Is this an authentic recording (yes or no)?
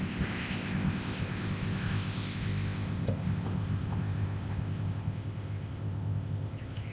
no